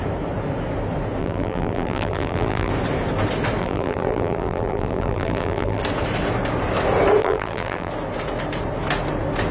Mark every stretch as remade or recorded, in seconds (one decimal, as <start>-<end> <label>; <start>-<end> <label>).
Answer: 0.0-1.2 recorded; 1.2-2.7 remade; 2.7-3.6 recorded; 3.6-5.8 remade; 5.8-7.2 recorded; 7.2-7.9 remade; 7.9-9.5 recorded